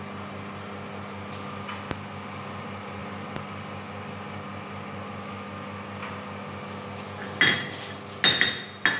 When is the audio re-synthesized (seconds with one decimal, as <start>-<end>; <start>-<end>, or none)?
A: none